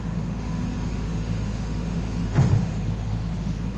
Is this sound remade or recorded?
remade